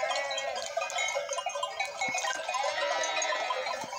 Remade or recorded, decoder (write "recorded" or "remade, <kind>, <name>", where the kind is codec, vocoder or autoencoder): recorded